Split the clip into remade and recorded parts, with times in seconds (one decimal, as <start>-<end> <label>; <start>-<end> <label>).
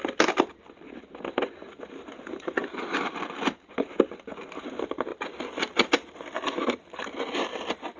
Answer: 0.0-2.6 recorded; 2.6-3.1 remade; 3.1-8.0 recorded